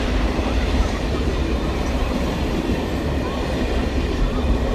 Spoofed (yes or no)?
yes